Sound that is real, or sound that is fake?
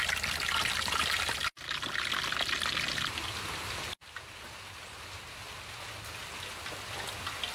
real